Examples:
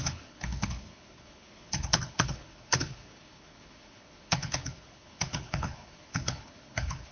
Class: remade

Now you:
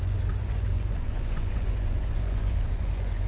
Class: remade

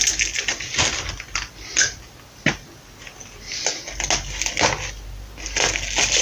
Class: recorded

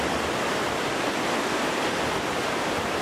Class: recorded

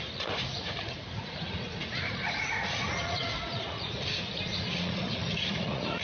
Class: remade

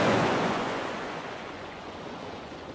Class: remade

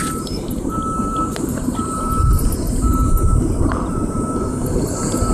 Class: remade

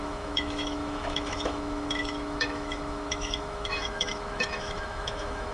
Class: remade